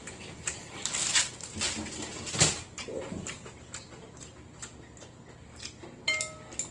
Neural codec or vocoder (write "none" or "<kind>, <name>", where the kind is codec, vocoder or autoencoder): none